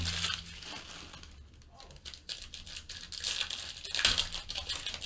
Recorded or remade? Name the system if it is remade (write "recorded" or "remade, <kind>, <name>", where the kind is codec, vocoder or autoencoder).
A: recorded